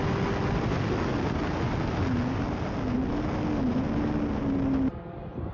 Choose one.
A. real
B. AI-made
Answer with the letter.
A